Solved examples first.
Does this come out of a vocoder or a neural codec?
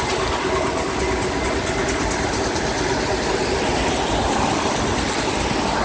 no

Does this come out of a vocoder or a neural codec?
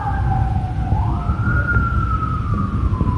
no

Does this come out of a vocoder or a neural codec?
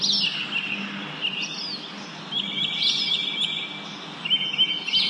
no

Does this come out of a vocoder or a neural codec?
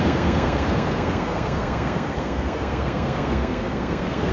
yes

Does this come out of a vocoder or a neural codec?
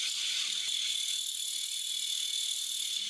no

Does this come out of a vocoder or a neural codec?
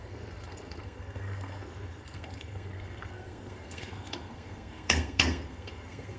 yes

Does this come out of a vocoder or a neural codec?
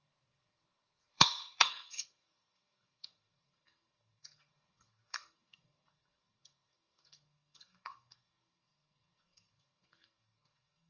yes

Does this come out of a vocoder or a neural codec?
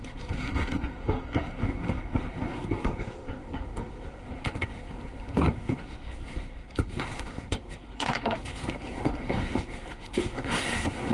yes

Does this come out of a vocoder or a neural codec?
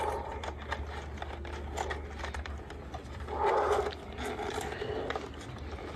no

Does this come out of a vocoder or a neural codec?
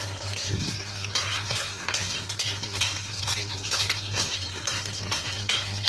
yes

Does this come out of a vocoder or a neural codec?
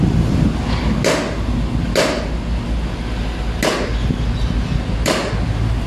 no